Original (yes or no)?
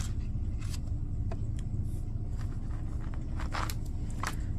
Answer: yes